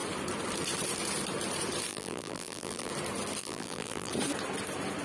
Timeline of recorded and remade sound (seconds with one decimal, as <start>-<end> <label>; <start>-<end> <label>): 0.0-1.9 recorded; 1.9-2.9 remade; 2.9-3.4 recorded; 3.4-4.1 remade; 4.1-5.0 recorded